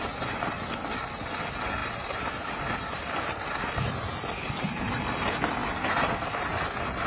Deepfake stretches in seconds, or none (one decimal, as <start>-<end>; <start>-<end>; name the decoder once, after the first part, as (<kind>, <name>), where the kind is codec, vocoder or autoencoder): none